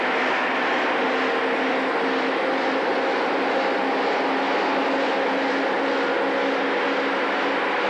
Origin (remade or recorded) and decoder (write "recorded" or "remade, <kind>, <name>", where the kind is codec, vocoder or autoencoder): recorded